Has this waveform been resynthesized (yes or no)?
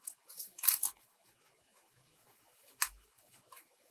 yes